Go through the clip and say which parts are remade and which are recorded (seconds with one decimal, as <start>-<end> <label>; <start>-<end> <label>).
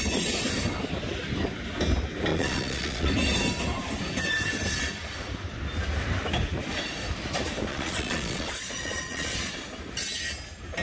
0.0-2.3 recorded; 2.3-3.1 remade; 3.1-7.7 recorded; 7.7-9.5 remade; 9.5-10.8 recorded